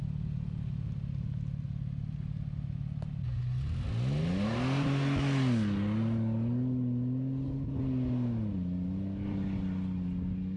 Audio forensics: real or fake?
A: real